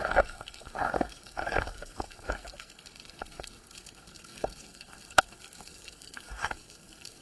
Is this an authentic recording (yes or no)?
no